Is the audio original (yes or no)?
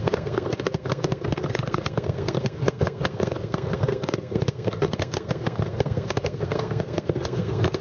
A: no